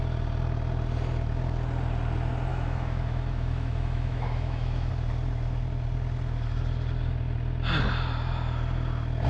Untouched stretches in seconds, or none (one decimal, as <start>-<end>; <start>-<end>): 0.0-2.5; 4.9-9.3